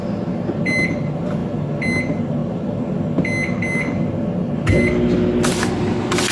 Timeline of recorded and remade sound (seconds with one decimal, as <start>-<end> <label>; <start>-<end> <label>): 0.0-6.3 recorded